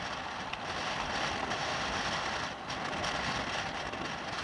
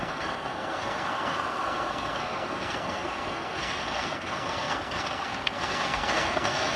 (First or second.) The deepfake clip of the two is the second